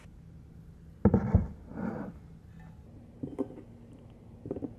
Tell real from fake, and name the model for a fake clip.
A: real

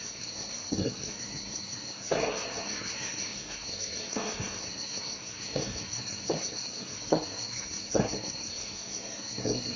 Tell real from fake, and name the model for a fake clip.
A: fake, codec, SNAC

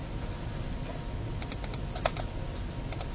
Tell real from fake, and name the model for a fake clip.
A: real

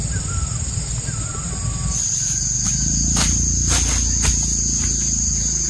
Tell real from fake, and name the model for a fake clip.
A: real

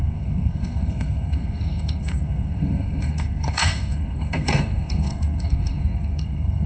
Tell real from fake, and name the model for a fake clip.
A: fake, codec, SNAC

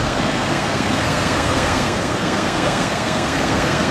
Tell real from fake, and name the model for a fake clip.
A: fake, codec, SNAC